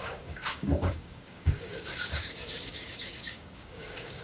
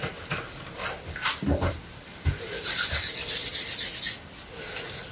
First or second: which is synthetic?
first